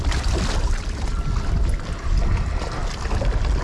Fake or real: real